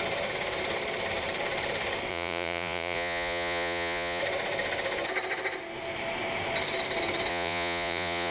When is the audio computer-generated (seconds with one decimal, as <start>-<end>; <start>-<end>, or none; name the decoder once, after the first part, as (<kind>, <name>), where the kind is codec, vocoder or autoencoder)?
2.1-4.2 (vocoder, Vocos); 7.3-8.3